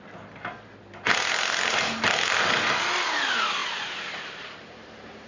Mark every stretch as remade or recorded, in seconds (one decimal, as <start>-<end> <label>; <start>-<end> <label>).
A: 0.0-3.6 recorded; 3.6-5.3 remade